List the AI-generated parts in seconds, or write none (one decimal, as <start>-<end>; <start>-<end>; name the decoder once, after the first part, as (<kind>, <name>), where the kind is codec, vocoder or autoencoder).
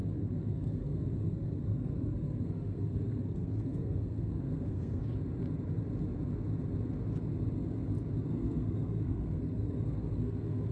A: 0.0-5.0 (codec, SNAC); 8.3-10.7